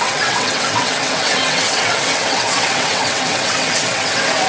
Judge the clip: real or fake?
fake